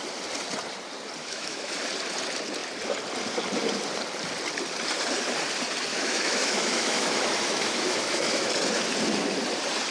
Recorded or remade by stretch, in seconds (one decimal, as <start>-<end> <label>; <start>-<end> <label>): 0.0-1.2 recorded; 1.2-1.7 remade; 1.7-5.9 recorded; 5.9-8.5 remade; 8.5-9.9 recorded